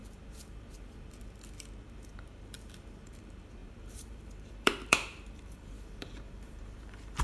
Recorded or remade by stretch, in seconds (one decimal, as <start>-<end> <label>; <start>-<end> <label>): 0.0-7.2 remade